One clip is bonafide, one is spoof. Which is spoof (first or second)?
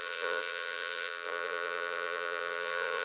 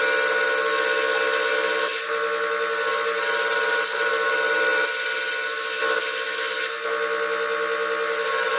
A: first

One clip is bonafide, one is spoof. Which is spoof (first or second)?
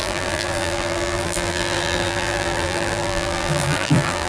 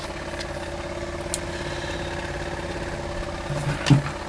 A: first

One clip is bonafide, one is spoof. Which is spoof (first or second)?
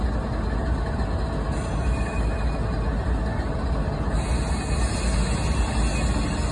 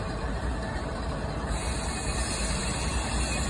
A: second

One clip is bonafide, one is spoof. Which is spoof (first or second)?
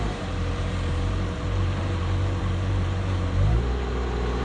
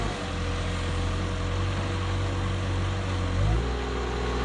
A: first